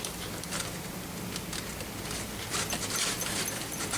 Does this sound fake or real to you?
real